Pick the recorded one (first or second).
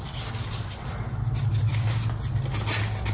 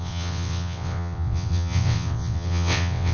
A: first